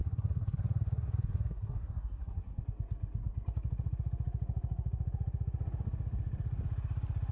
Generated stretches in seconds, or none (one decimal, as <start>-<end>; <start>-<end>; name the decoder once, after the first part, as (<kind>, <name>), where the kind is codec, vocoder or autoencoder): 0.0-2.6 (codec, SNAC)